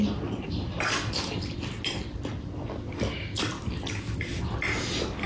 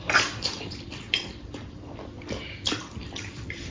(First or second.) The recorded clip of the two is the first